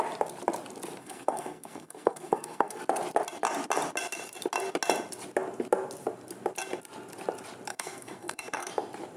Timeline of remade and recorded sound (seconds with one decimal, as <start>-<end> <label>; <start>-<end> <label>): 0.0-1.0 recorded; 1.0-2.8 remade; 2.8-7.7 recorded; 7.7-8.7 remade; 8.7-9.2 recorded